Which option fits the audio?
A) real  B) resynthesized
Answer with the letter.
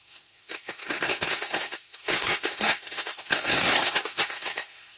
B